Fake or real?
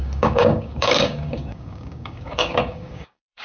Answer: fake